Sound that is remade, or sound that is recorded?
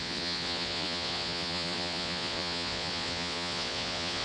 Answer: remade